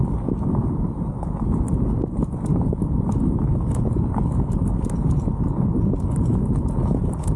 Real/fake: real